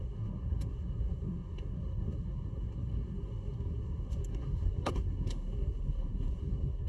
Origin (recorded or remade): remade